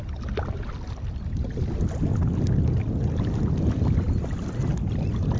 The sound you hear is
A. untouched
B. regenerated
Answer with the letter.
A